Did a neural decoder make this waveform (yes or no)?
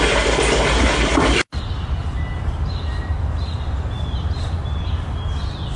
no